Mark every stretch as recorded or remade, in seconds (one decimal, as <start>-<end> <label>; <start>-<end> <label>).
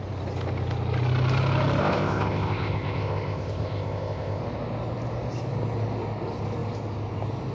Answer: 0.0-1.8 recorded; 1.8-4.4 remade; 4.4-7.5 recorded